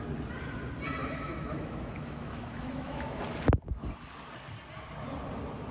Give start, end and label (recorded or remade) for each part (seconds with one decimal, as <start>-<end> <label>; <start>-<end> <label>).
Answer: 0.0-1.0 recorded; 1.0-3.2 remade; 3.2-5.7 recorded

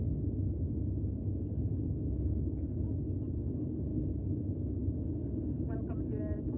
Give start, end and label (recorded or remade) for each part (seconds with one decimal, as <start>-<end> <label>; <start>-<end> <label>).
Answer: 0.0-6.6 recorded

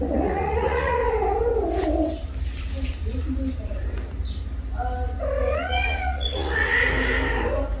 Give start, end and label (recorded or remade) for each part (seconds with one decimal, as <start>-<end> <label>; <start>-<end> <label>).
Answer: 0.0-1.0 remade; 1.0-5.5 recorded; 5.5-6.7 remade; 6.7-7.8 recorded

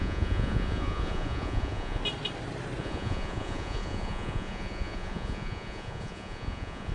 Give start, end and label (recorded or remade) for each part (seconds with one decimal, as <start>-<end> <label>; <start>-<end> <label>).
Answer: 0.0-2.0 remade; 2.0-2.8 recorded; 2.8-6.9 remade

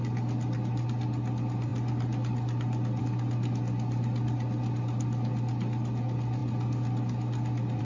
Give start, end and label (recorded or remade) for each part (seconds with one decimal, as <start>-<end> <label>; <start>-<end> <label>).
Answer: 0.0-7.8 recorded